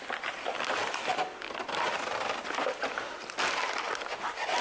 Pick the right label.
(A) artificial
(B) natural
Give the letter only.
B